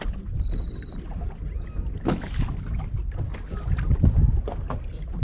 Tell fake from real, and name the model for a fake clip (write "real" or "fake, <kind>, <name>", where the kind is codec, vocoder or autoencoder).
real